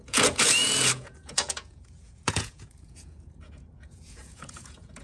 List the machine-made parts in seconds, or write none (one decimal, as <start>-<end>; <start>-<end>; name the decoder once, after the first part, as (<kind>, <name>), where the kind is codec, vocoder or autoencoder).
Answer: 0.0-5.0 (vocoder, Vocos)